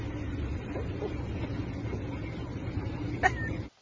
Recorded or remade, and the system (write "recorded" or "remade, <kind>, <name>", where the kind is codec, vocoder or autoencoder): recorded